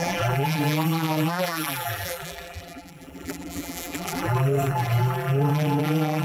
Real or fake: fake